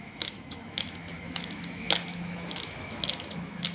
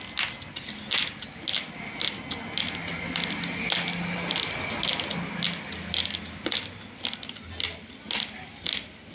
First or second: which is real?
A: second